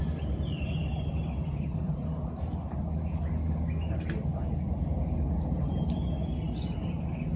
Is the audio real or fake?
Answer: real